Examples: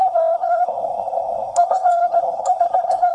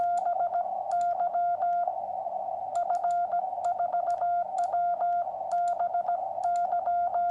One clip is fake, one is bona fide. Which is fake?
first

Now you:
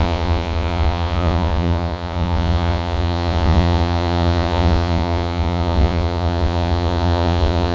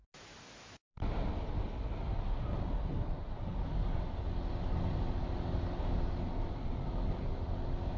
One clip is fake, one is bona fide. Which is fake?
first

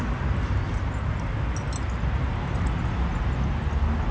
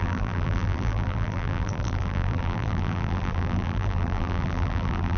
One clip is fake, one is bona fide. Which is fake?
second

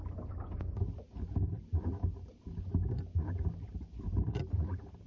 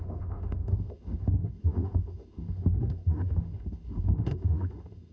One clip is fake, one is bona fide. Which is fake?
second